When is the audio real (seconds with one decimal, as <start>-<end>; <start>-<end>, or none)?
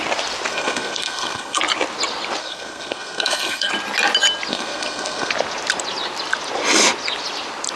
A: 0.0-0.5; 1.6-2.4; 3.7-4.5; 5.3-7.8